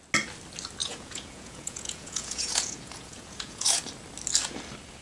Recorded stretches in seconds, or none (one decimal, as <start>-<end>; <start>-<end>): 0.0-0.8; 3.8-5.0